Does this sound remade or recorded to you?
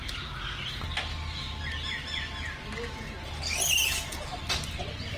recorded